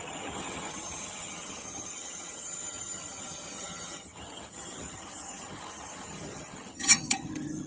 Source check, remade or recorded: remade